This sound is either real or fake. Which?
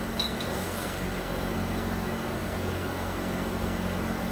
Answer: fake